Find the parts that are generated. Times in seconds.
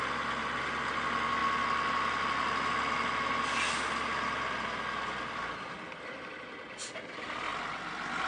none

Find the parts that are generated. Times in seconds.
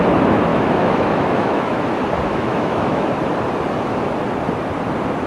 0.5-1.8 (autoencoder, DAC-VAE); 2.3-3.1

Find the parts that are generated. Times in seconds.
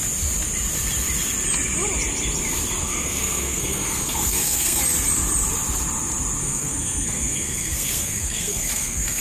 2.8-4.8 (codec, SNAC); 6.4-9.2